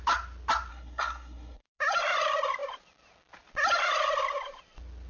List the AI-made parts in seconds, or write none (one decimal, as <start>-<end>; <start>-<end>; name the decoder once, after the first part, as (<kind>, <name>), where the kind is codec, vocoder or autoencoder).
0.7-1.6 (codec, SNAC)